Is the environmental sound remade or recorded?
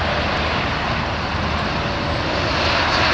recorded